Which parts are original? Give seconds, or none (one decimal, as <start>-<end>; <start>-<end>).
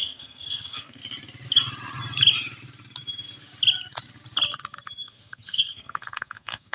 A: 1.0-5.0